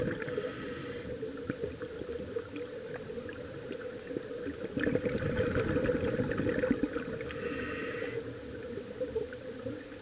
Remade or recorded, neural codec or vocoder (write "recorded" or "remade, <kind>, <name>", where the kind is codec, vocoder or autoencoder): recorded